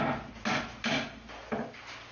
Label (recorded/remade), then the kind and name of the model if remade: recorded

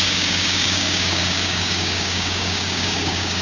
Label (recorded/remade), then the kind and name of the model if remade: remade, codec, DAC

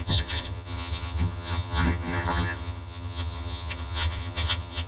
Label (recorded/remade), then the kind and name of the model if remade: remade, vocoder, HiFi-GAN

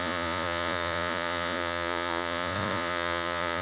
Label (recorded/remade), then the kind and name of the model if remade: remade, vocoder, Vocos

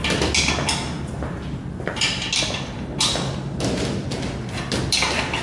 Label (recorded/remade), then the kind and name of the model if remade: recorded